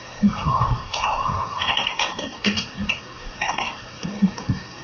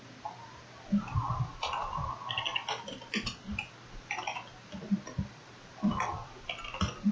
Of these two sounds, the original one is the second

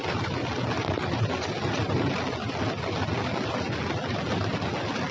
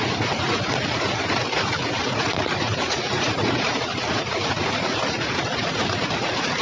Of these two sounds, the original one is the first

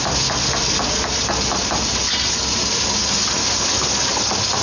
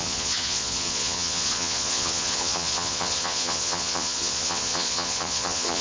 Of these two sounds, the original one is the first